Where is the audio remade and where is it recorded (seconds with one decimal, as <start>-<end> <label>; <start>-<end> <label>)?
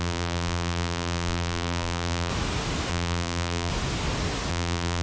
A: 0.0-2.3 remade; 2.3-2.9 recorded; 2.9-3.7 remade; 3.7-4.5 recorded; 4.5-5.0 remade